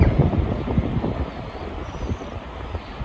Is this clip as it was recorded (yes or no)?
yes